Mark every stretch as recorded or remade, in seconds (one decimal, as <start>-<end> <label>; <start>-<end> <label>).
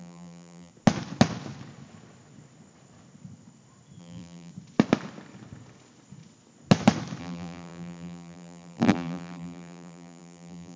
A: 0.0-0.7 remade; 0.7-4.0 recorded; 4.0-4.5 remade; 4.5-7.2 recorded; 7.2-10.8 remade